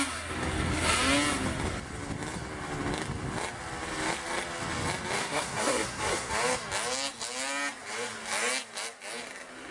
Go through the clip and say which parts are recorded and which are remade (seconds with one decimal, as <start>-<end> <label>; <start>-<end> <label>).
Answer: 0.0-5.2 recorded; 5.2-6.3 remade; 6.3-9.7 recorded